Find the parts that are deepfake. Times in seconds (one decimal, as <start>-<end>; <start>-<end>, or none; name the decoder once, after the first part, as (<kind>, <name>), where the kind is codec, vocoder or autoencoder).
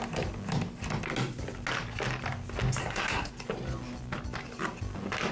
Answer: 2.8-3.3 (codec, SNAC)